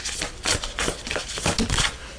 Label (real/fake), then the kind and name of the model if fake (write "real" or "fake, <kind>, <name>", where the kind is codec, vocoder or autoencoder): real